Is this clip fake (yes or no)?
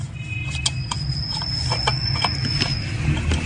no